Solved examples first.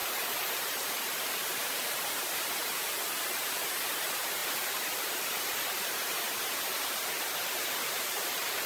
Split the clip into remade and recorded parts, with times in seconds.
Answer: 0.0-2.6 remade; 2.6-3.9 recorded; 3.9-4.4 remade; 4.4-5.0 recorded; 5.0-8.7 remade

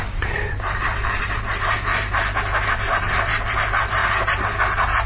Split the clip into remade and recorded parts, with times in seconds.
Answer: 0.0-1.9 remade; 1.9-2.6 recorded; 2.6-4.0 remade; 4.0-5.1 recorded